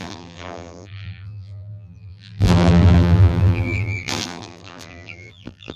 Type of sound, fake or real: fake